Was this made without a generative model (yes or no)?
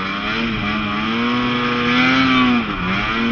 yes